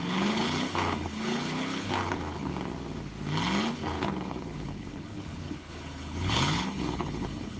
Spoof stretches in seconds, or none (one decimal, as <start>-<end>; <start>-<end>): 0.0-2.5; 3.6-7.6